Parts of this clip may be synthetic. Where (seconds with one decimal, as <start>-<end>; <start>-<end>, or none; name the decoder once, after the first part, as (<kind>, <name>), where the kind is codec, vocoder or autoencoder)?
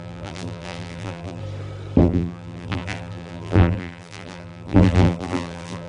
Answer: 0.0-1.4 (vocoder, BigVGAN v2); 2.0-5.9